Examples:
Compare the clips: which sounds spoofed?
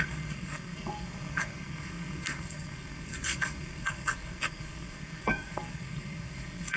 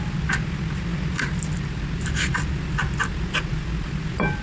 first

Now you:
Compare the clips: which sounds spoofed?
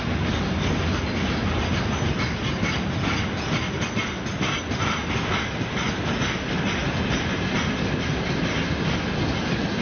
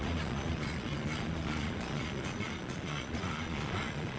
second